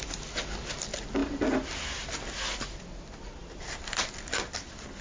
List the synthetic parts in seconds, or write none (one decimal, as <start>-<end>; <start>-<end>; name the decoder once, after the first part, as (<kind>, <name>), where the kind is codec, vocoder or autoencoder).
none